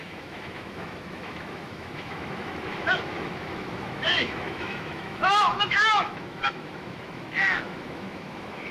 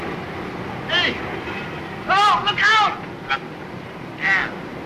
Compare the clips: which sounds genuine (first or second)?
second